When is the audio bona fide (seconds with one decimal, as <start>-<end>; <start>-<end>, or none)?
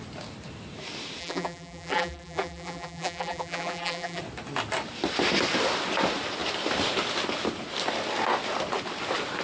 0.0-1.2; 4.2-9.4